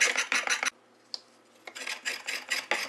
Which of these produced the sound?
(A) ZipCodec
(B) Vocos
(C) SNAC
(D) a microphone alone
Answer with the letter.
D